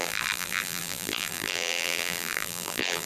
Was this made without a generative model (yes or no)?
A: no